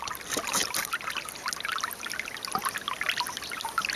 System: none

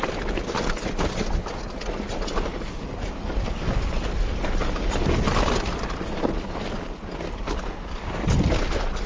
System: none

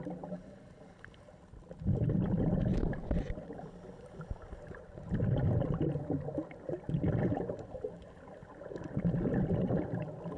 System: none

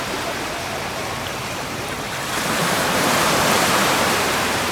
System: vocoder, BigVGAN v2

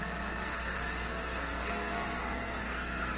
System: codec, SNAC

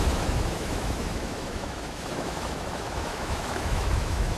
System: autoencoder, DAC-VAE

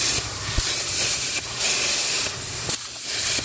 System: none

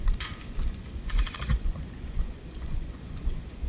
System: vocoder, Vocos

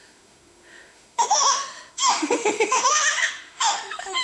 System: autoencoder, DAC-VAE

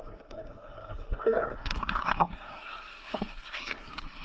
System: codec, SNAC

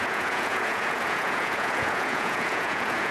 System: vocoder, Vocos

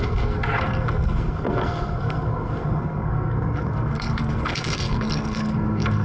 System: codec, SNAC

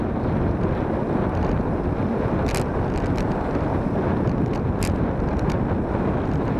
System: none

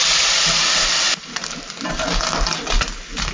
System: none